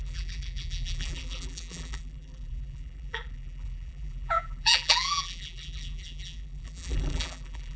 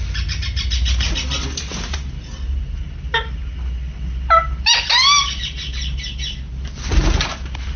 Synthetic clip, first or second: first